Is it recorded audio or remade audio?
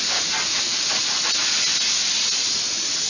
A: recorded